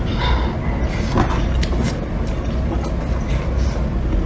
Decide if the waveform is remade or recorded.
recorded